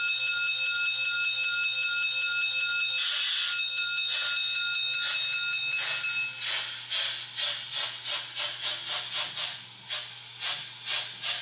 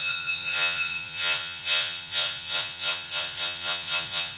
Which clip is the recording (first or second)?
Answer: first